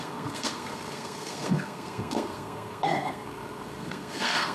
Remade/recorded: remade